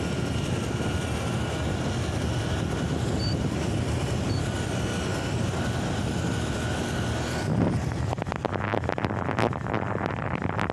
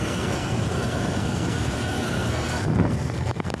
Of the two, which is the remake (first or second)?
second